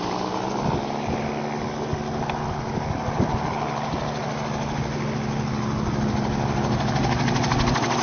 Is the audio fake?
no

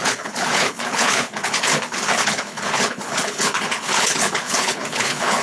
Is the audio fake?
yes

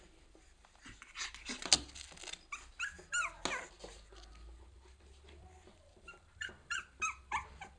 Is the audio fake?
no